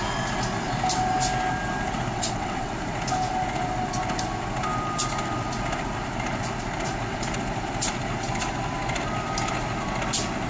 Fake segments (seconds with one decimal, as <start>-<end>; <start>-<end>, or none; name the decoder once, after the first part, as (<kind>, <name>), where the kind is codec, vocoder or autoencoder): 2.1-2.7 (vocoder, WaveNeXt)